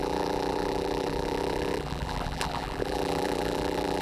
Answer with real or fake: fake